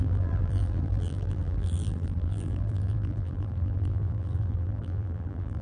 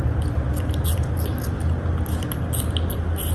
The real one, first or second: second